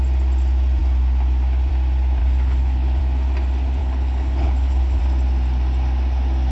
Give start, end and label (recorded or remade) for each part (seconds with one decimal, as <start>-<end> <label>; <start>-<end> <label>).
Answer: 0.0-2.2 recorded; 2.2-3.0 remade; 3.0-3.8 recorded; 3.8-5.0 remade; 5.0-6.5 recorded